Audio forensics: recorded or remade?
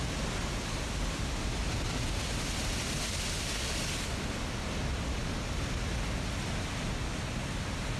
recorded